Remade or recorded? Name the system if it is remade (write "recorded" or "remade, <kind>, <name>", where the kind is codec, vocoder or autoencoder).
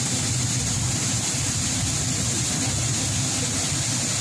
recorded